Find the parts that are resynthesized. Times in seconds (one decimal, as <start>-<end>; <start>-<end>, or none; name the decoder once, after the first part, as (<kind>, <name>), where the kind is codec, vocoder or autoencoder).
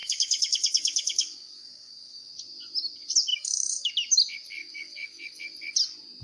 0.0-2.3 (codec, DAC); 3.3-3.9; 4.6-5.4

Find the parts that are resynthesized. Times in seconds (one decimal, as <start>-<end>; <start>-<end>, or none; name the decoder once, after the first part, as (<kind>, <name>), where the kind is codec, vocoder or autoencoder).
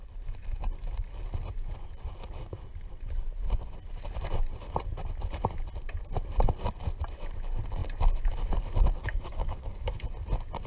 9.0-10.1 (codec, DAC)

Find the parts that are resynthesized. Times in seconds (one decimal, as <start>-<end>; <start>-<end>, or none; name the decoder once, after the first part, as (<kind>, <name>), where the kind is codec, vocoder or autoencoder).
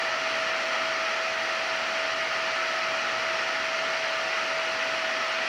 none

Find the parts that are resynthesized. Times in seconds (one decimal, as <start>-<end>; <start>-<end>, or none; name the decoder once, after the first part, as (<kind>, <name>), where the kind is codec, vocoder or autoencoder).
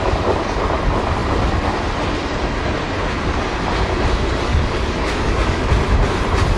4.5-5.7 (codec, DAC)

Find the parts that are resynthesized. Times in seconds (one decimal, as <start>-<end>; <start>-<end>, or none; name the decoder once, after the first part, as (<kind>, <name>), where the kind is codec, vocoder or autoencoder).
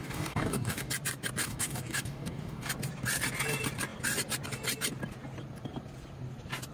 0.0-0.9 (codec, DAC); 1.4-2.7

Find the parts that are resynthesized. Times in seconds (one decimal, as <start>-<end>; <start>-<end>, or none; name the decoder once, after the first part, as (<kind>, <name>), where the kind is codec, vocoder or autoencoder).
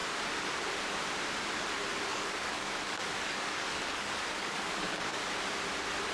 2.1-5.2 (codec, DAC)